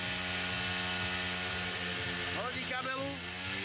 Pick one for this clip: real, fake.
real